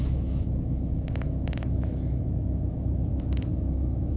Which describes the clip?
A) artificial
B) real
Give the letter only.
A